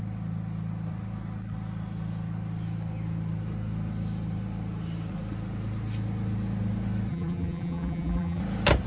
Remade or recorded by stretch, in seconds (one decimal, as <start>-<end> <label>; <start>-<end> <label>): 0.0-7.1 recorded; 7.1-8.4 remade; 8.4-8.9 recorded